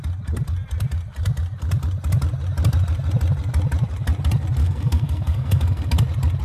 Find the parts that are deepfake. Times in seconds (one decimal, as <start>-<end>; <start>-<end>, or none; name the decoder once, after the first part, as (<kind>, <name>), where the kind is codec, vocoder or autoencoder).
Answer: 4.6-5.9 (codec, SNAC)